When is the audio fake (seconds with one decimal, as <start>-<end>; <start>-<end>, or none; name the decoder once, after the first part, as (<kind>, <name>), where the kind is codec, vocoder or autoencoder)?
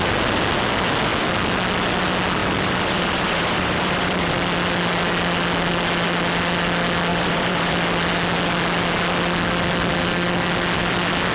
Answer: 2.4-4.3 (vocoder, BigVGAN v2); 7.1-7.7